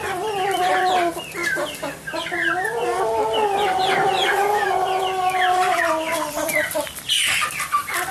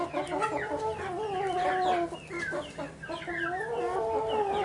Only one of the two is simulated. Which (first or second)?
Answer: first